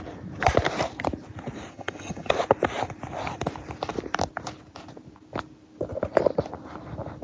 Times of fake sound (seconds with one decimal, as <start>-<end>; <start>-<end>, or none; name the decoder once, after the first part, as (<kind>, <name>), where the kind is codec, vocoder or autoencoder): 1.7-2.3 (vocoder, HiFi-GAN)